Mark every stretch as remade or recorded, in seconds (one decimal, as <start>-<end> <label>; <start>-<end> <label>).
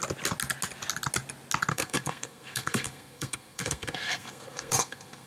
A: 0.0-1.7 recorded; 1.7-5.3 remade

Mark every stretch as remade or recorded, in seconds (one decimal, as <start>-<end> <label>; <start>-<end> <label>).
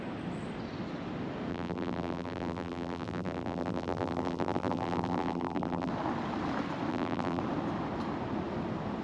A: 0.0-1.5 recorded; 1.5-5.9 remade; 5.9-6.9 recorded; 6.9-7.4 remade; 7.4-9.0 recorded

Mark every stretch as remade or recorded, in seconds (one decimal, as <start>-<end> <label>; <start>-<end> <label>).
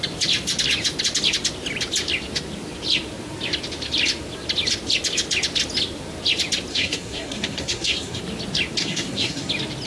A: 0.0-6.7 recorded; 6.7-8.2 remade; 8.2-8.8 recorded; 8.8-9.5 remade; 9.5-9.9 recorded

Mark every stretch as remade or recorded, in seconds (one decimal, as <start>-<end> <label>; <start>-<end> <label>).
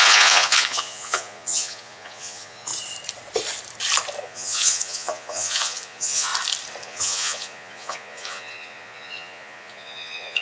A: 0.0-2.7 remade; 2.7-4.2 recorded; 4.2-6.3 remade; 6.3-6.8 recorded; 6.8-10.4 remade